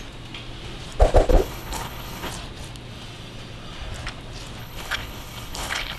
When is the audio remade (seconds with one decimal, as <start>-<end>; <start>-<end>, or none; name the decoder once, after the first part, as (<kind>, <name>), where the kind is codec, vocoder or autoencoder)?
1.3-2.3 (codec, HILCodec); 4.6-6.0